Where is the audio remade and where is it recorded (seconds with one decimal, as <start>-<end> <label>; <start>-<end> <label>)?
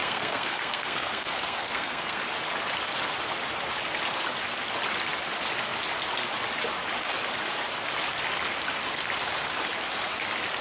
0.0-2.2 remade; 2.2-10.6 recorded